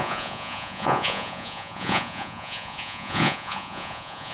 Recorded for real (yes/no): no